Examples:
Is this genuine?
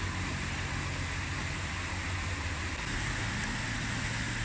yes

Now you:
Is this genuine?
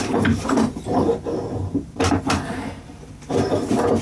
no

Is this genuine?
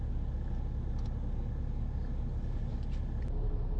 yes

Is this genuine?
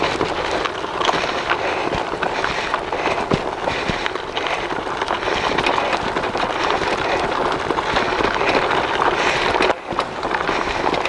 yes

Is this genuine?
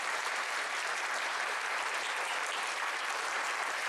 no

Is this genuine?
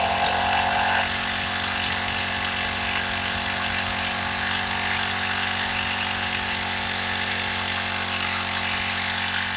yes